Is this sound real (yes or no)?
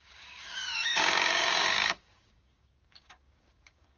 no